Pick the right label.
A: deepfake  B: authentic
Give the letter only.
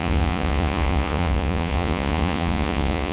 A